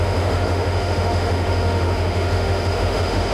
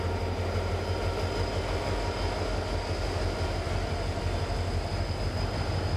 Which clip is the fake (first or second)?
first